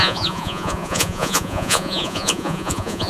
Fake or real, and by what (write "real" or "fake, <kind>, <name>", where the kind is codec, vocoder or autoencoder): fake, vocoder, Vocos